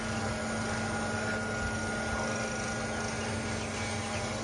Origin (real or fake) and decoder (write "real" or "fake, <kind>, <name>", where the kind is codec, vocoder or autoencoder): real